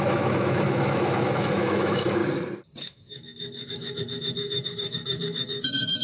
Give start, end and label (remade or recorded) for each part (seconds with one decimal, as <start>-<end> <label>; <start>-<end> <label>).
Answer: 0.0-2.2 remade; 2.2-2.8 recorded; 2.8-6.0 remade

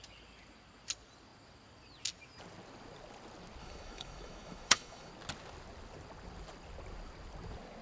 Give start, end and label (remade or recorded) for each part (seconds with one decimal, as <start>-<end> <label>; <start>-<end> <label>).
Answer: 0.0-3.6 recorded; 3.6-5.1 remade; 5.1-7.8 recorded

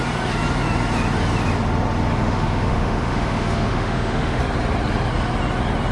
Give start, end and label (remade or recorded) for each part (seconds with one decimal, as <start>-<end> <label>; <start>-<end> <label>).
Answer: 0.0-2.1 recorded; 2.1-4.4 remade; 4.4-5.9 recorded

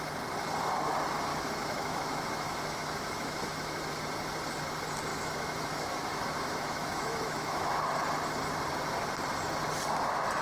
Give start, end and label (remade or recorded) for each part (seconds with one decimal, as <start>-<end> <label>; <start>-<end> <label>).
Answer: 0.0-1.3 recorded; 1.3-4.0 remade; 4.0-5.1 recorded; 5.1-7.7 remade; 7.7-10.4 recorded